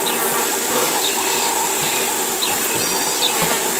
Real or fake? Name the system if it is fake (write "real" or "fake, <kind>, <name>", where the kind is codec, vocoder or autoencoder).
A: real